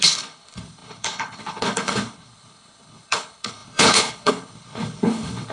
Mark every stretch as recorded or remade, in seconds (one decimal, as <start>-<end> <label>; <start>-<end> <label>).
0.0-5.5 remade